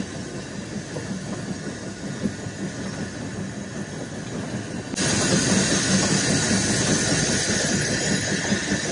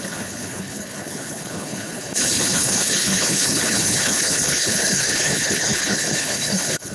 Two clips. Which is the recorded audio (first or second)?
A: first